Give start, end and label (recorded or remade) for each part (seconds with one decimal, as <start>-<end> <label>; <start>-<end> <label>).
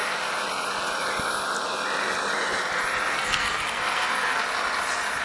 0.0-3.1 recorded; 3.1-4.4 remade; 4.4-5.2 recorded